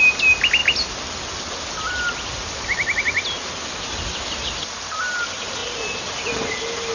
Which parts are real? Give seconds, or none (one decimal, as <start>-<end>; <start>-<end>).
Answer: 0.0-6.9